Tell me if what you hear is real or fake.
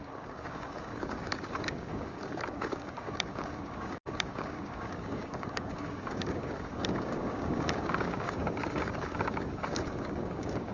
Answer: fake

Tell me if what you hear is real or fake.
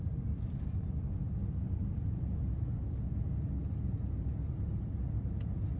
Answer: real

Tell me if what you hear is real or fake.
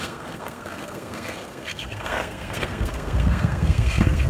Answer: fake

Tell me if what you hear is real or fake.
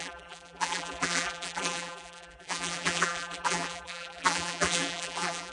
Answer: fake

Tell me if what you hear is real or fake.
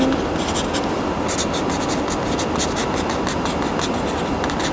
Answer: real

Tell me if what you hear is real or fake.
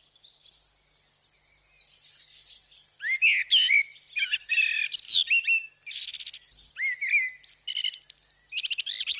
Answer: real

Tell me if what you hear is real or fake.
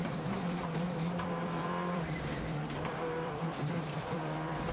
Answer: fake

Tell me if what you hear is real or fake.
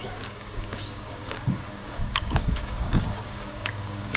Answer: fake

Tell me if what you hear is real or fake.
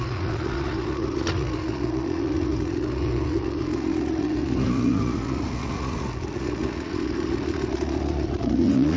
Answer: fake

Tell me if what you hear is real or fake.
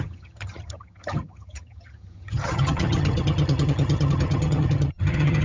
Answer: fake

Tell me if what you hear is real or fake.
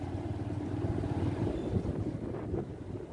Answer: real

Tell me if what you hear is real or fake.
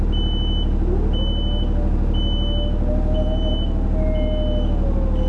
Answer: real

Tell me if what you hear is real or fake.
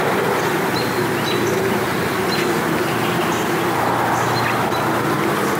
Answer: real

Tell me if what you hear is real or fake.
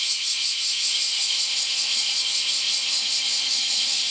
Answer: fake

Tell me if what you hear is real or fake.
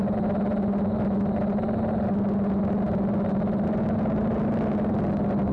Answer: real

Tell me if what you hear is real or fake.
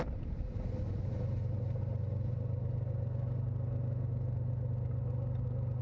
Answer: real